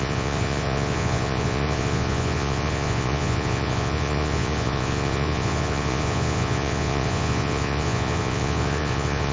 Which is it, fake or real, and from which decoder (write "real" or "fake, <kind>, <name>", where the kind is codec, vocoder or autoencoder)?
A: fake, vocoder, Vocos